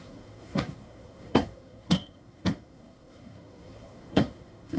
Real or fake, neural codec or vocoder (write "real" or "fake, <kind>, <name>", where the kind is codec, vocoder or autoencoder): fake, codec, SNAC